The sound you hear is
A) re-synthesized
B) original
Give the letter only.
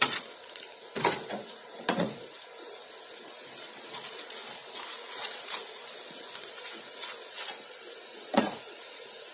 A